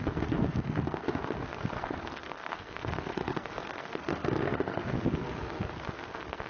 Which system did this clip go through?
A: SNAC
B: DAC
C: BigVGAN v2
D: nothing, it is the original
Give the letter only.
A